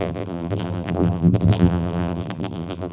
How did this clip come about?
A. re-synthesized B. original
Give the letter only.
A